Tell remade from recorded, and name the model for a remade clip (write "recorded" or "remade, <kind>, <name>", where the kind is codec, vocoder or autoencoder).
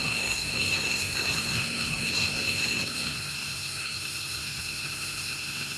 remade, codec, SNAC